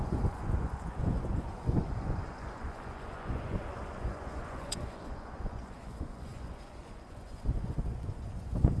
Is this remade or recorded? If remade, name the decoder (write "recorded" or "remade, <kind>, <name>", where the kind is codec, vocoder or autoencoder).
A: remade, vocoder, Vocos